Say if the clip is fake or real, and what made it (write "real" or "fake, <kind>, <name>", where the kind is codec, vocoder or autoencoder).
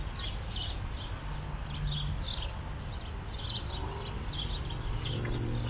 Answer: real